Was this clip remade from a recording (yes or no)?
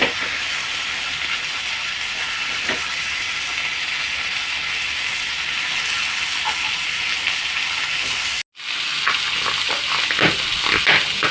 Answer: no